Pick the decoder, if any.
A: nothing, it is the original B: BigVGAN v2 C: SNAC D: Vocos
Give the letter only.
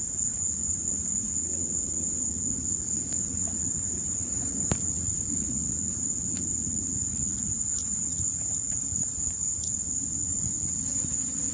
D